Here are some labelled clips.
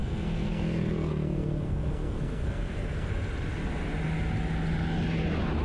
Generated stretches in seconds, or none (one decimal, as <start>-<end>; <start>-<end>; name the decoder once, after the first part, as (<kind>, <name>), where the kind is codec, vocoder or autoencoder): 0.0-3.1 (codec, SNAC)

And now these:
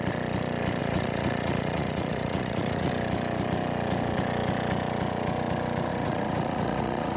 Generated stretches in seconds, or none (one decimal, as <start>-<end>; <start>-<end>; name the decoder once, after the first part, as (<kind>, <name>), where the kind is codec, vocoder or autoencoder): 0.8-2.9 (vocoder, Vocos); 5.9-7.2

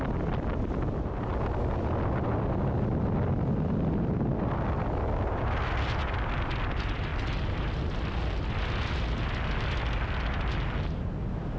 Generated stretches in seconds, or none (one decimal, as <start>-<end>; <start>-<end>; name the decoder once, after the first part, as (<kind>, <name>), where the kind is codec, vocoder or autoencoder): none

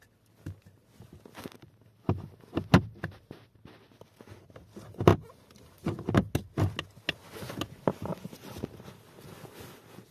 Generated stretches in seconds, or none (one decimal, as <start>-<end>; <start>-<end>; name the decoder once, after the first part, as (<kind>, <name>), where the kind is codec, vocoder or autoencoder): none